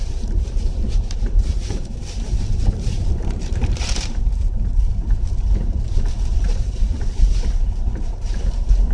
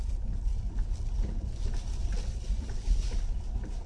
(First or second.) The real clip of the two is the second